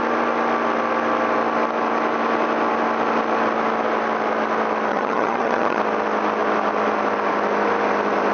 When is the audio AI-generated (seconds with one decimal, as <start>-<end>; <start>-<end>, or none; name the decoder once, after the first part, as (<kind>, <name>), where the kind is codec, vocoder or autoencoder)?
4.9-5.8 (vocoder, HiFi-GAN)

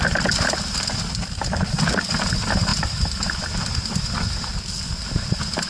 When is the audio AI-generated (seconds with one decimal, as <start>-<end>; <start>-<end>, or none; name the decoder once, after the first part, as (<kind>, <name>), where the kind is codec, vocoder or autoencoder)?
none

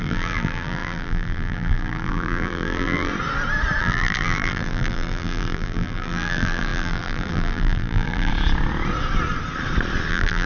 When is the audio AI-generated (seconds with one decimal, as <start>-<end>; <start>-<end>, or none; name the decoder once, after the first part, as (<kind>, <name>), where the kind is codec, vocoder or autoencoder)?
0.0-3.1 (vocoder, BigVGAN v2); 3.8-8.3; 10.1-10.5

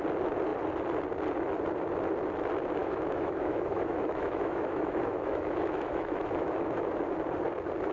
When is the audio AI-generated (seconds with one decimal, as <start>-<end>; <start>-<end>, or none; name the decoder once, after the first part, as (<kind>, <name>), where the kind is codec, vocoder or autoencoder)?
2.8-7.0 (autoencoder, DAC-VAE)

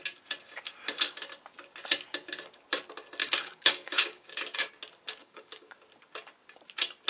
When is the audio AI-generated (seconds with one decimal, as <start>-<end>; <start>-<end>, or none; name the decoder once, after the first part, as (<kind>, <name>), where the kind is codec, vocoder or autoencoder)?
3.2-4.7 (codec, DAC); 5.2-5.7

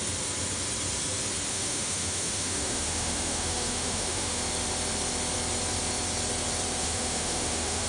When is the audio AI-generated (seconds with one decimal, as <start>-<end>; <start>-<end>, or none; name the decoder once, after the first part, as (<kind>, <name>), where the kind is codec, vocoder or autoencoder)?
1.5-4.4 (autoencoder, DAC-VAE); 6.8-7.9

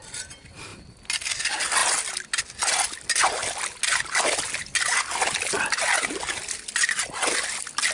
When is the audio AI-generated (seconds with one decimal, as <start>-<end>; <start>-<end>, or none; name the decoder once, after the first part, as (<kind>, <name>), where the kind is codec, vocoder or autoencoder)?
none